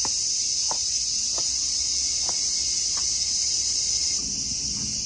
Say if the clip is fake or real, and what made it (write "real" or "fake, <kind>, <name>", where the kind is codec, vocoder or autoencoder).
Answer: real